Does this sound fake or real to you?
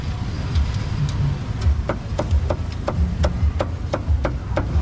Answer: real